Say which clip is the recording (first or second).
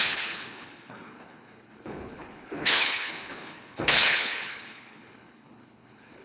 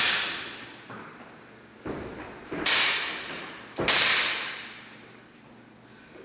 second